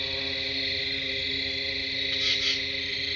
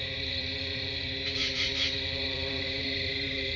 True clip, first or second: first